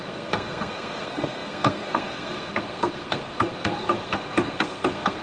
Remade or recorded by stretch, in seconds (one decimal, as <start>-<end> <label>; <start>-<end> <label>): 0.0-5.2 remade